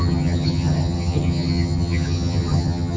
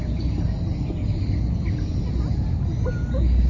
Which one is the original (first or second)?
second